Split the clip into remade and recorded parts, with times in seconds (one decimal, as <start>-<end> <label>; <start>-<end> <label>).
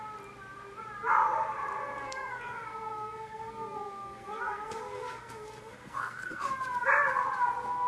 0.0-1.8 recorded; 1.8-6.5 remade; 6.5-7.9 recorded